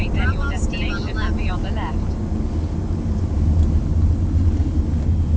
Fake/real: real